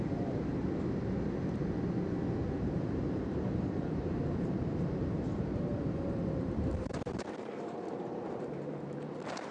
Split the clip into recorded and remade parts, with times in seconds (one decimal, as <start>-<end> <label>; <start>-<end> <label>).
0.0-0.5 remade; 0.5-2.6 recorded; 2.6-9.5 remade

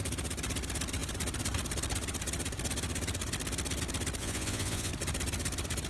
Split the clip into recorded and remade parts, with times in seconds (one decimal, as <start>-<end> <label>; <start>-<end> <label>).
0.0-4.2 recorded; 4.2-4.9 remade; 4.9-5.9 recorded